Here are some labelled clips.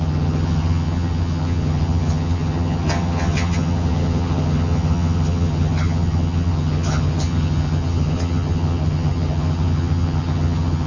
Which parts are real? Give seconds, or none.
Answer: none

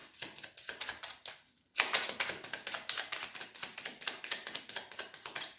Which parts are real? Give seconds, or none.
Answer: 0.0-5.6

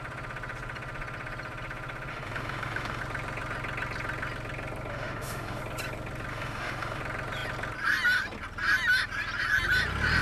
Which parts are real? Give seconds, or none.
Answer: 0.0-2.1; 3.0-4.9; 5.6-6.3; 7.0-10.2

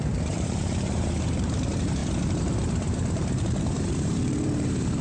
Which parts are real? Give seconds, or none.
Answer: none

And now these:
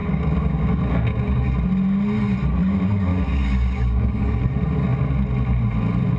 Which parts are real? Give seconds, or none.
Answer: 0.8-3.1; 4.4-6.2

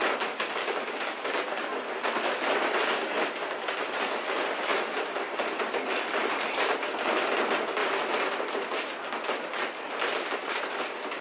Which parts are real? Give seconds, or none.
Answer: 0.0-0.6; 1.3-11.2

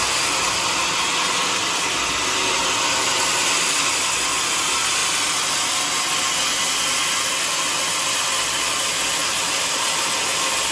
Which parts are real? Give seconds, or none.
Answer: 0.0-9.2; 10.2-10.7

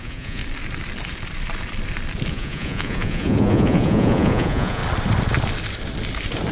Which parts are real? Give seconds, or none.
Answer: 0.4-2.3; 4.8-6.5